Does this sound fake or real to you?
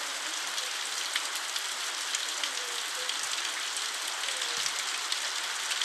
real